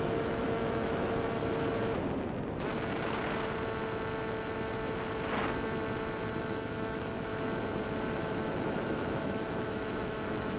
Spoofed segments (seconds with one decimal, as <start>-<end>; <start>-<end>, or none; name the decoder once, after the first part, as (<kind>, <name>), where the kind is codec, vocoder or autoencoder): 0.0-1.4 (autoencoder, DAC-VAE); 6.4-7.3; 8.1-10.6